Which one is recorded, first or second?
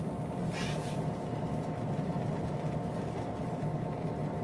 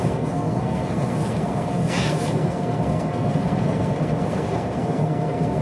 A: first